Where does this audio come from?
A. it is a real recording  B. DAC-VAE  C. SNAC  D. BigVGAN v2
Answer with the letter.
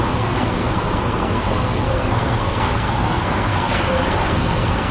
C